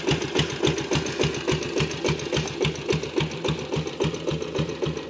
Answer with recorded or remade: recorded